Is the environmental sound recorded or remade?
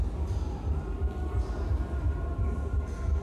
recorded